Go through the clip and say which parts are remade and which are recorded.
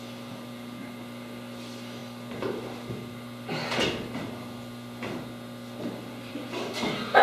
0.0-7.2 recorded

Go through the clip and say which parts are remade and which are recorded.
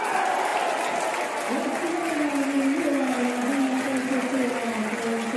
0.0-5.4 recorded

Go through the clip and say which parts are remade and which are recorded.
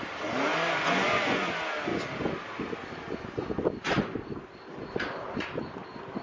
0.0-0.5 recorded; 0.5-1.5 remade; 1.5-6.2 recorded